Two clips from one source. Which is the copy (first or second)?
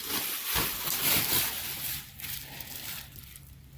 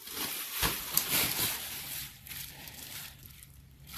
second